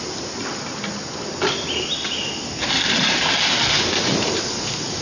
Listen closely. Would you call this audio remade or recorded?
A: recorded